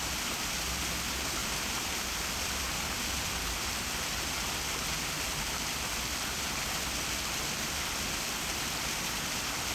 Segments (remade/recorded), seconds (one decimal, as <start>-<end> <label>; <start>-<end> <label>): 0.0-1.4 recorded; 1.4-1.9 remade; 1.9-9.7 recorded